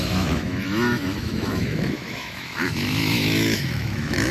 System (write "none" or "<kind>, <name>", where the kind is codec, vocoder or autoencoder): autoencoder, DAC-VAE